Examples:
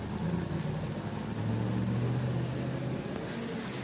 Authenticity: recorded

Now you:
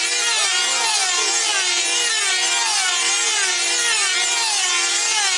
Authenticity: recorded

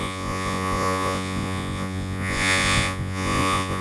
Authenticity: remade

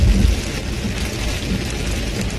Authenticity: recorded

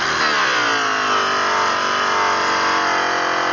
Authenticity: recorded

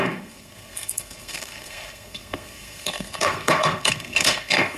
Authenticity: remade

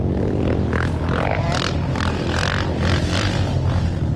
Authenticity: recorded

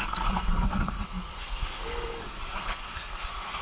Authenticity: remade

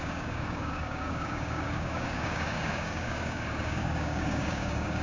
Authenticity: remade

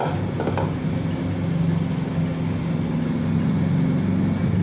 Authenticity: recorded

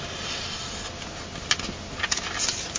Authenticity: recorded